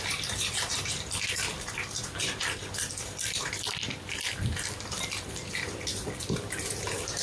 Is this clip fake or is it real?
fake